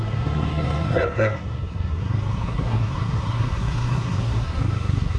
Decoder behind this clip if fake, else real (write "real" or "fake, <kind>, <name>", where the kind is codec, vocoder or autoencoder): fake, codec, SNAC